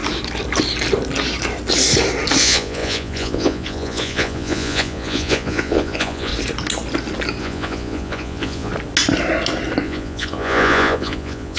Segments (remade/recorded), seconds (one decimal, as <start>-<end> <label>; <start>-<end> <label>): 0.0-2.4 recorded; 2.4-6.3 remade; 6.3-7.4 recorded; 7.4-8.7 remade; 8.7-9.8 recorded; 9.8-11.6 remade